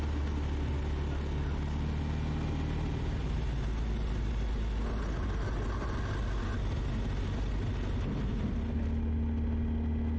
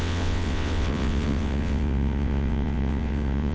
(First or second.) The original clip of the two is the first